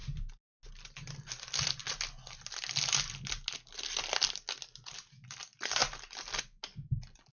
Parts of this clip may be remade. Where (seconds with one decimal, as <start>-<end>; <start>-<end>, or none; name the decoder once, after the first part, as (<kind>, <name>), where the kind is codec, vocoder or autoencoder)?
none